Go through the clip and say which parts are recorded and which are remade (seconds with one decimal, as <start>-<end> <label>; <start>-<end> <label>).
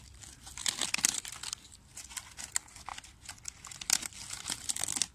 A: 0.0-5.1 recorded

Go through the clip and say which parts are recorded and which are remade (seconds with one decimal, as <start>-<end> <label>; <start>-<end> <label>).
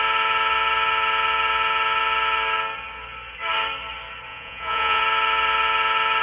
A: 0.0-4.3 recorded; 4.3-5.0 remade; 5.0-6.2 recorded